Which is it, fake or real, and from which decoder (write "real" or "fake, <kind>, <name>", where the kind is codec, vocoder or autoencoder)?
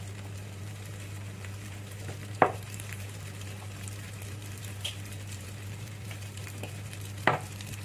fake, vocoder, BigVGAN v2